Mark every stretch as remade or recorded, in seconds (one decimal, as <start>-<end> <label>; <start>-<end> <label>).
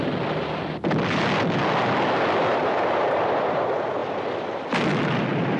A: 0.0-2.5 recorded; 2.5-3.2 remade; 3.2-5.6 recorded